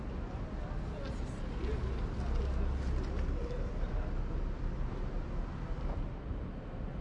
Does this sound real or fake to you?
real